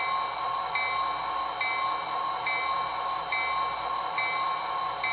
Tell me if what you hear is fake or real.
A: real